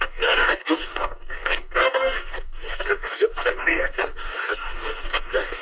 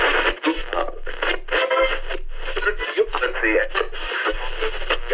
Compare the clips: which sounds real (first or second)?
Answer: second